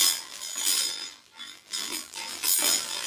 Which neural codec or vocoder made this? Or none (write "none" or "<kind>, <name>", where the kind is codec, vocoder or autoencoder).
vocoder, BigVGAN v2